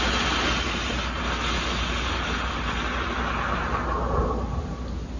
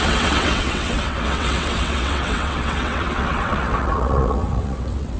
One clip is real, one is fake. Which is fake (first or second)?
second